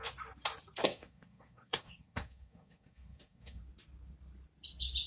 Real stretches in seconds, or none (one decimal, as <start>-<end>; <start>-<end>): 0.0-0.8; 3.6-5.1